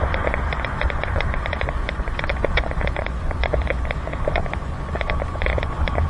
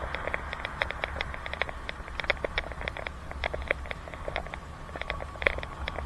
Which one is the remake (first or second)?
first